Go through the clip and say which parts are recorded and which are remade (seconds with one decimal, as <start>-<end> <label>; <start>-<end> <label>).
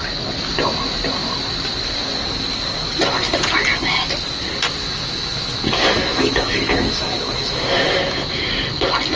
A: 0.0-4.8 recorded; 4.8-8.3 remade; 8.3-9.2 recorded